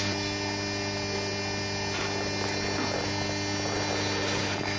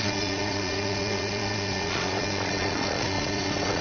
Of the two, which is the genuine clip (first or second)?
first